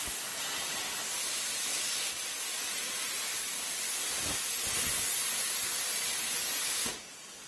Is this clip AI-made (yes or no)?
no